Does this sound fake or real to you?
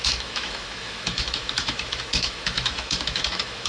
fake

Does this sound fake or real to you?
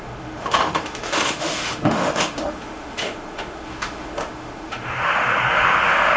fake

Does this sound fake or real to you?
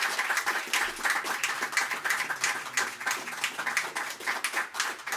real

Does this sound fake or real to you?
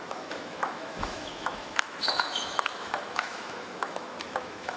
fake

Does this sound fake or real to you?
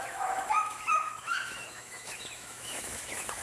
fake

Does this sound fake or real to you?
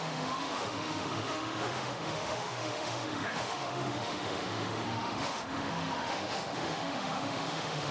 fake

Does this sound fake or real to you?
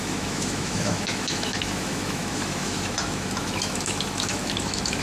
fake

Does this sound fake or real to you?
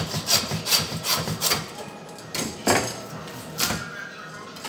real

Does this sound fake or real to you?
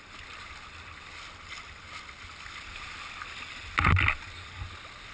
real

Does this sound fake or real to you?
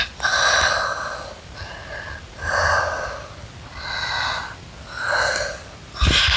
real